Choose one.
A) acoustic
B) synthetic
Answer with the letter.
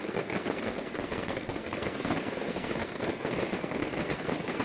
B